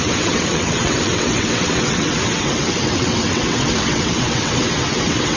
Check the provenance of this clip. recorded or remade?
remade